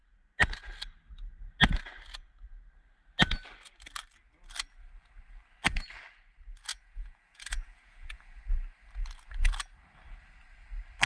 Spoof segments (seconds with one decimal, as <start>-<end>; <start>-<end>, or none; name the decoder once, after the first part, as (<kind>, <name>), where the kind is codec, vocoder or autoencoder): 6.7-8.4 (vocoder, Vocos)